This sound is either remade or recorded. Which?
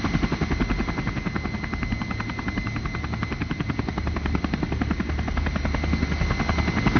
recorded